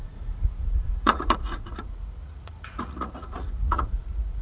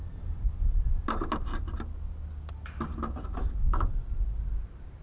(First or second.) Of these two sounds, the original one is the second